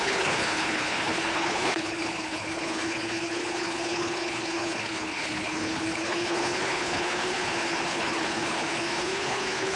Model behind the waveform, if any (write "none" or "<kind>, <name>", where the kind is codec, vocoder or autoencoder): codec, HILCodec